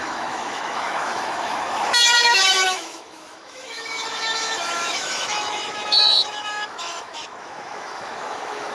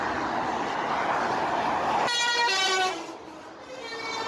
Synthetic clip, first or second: first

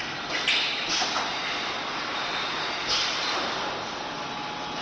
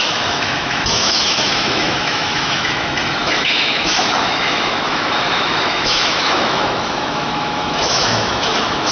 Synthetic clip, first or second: second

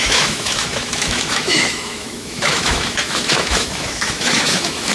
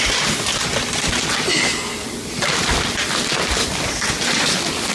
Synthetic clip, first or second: first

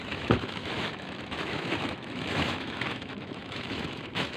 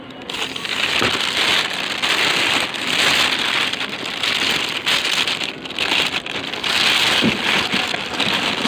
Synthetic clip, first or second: first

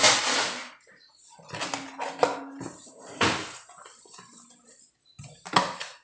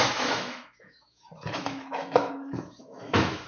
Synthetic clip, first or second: second